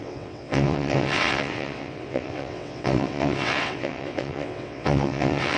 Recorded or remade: remade